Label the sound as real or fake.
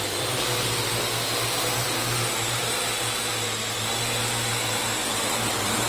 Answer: real